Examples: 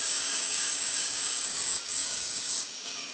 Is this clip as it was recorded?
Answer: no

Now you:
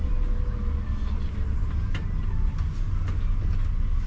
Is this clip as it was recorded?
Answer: yes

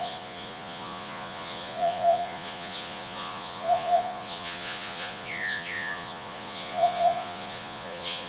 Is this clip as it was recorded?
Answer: no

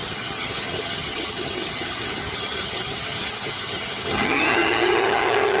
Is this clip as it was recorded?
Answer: no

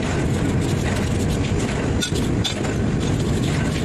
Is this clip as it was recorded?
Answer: yes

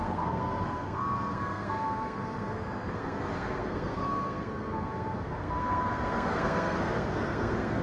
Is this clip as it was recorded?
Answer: no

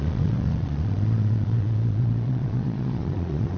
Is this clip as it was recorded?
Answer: no